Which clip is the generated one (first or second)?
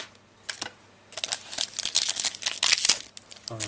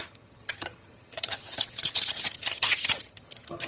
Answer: second